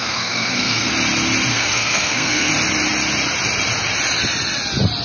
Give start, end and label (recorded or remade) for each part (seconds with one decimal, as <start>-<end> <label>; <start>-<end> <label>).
0.0-0.9 remade; 0.9-1.5 recorded; 1.5-2.5 remade; 2.5-5.0 recorded